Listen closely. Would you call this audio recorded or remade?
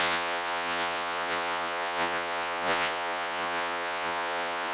remade